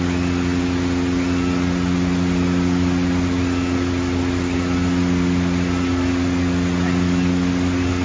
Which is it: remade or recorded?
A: recorded